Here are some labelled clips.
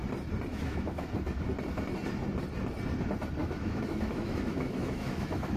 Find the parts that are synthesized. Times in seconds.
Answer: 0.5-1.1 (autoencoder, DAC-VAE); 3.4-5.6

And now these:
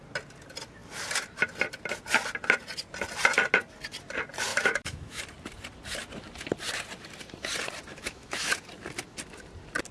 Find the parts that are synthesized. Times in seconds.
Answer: 4.5-5.2 (autoencoder, DAC-VAE); 7.9-8.5